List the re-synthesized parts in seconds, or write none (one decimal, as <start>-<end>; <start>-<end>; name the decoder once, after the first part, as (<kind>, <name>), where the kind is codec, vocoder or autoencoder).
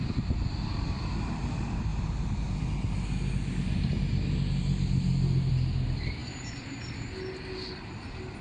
none